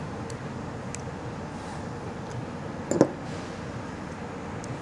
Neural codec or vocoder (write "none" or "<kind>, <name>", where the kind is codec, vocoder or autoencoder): none